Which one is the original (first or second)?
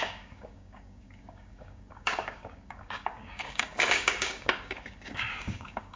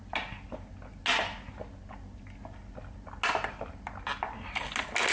second